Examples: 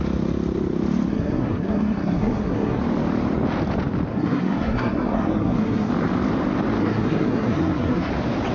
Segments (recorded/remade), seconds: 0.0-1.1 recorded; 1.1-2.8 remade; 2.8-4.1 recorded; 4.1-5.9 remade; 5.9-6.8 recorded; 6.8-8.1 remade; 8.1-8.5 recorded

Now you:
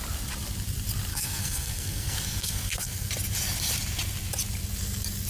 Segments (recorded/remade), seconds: 0.0-1.1 recorded; 1.1-3.1 remade; 3.1-5.3 recorded